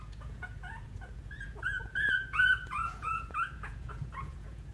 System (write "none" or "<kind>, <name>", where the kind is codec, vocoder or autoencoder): vocoder, Vocos